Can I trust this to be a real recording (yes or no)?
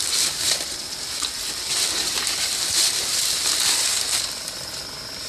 yes